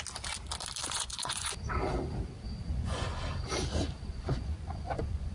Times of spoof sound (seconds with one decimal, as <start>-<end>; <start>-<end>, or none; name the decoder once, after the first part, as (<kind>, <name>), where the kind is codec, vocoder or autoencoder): 0.8-1.5 (vocoder, Vocos); 2.6-3.2; 4.1-5.3